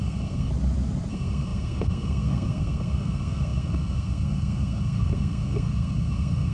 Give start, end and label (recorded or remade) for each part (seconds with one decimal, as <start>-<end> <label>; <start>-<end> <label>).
0.0-0.5 remade; 0.5-1.1 recorded; 1.1-6.5 remade